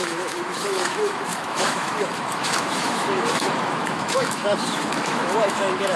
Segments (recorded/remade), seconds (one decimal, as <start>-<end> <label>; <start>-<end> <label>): 0.0-6.0 remade